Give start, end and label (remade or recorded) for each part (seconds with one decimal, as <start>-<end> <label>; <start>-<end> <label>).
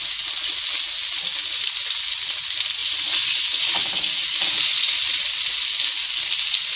0.0-6.8 recorded